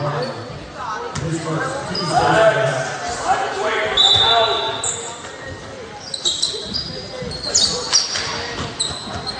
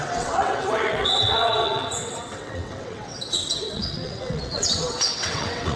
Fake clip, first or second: second